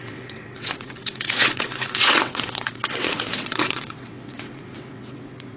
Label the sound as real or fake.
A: fake